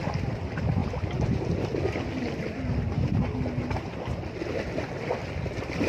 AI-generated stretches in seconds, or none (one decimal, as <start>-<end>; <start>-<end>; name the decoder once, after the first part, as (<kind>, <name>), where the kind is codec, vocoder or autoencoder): none